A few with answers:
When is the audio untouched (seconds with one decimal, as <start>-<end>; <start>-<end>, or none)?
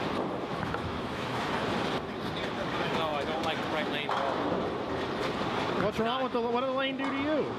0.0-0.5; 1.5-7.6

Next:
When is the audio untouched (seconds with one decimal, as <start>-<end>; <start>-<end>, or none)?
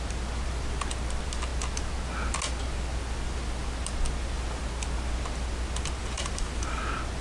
0.0-6.0; 6.8-7.2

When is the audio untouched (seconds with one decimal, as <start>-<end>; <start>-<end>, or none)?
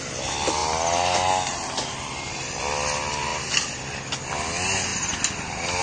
0.0-5.8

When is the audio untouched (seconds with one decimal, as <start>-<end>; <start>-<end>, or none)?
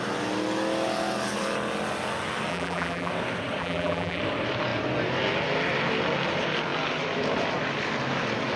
0.0-2.5; 3.1-3.6; 4.2-8.6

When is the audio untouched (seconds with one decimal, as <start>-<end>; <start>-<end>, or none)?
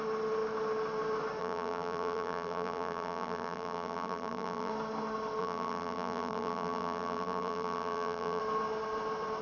0.0-1.4; 4.7-5.4; 8.4-9.4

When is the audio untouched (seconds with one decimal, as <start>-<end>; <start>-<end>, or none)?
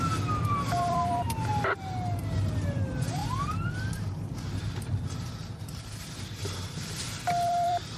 1.5-2.5; 3.2-6.2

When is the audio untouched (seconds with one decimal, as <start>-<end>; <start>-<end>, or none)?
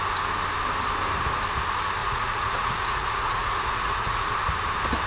0.0-2.0; 4.4-5.1